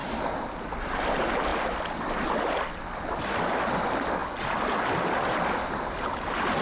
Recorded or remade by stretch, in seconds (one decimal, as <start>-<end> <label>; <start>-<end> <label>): 0.0-6.6 recorded